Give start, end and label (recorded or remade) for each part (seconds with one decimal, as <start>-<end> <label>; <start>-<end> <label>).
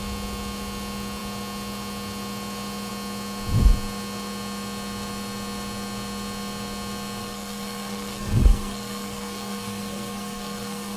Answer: 0.0-7.2 recorded; 7.2-11.0 remade